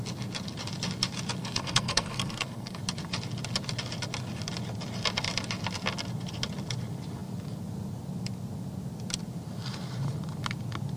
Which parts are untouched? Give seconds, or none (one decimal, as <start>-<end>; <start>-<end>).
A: 0.0-1.4; 2.8-11.0